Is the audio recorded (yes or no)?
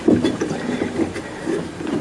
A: no